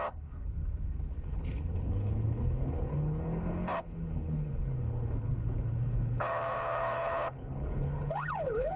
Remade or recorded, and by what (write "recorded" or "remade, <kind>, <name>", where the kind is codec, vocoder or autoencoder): remade, codec, HILCodec